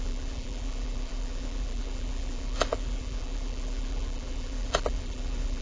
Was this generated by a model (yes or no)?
yes